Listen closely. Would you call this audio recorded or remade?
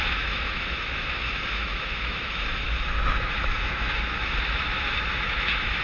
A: remade